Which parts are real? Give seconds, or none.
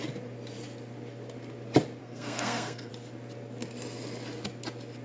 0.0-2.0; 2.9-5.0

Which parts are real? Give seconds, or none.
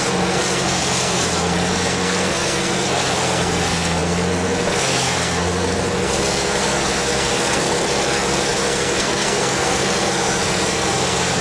none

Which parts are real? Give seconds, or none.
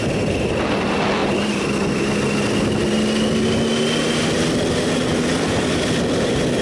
0.0-6.6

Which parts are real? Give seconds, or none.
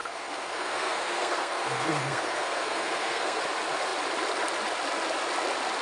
3.4-5.8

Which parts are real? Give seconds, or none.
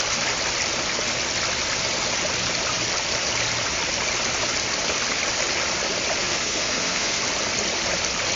0.0-6.2; 7.2-8.4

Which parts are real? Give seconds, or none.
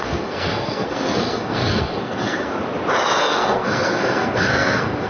2.5-3.2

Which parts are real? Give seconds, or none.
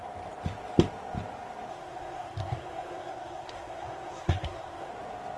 0.0-1.7; 4.9-5.4